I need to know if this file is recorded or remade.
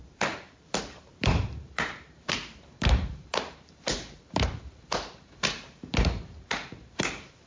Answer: remade